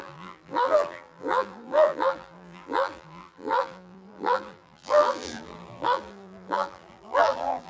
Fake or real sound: fake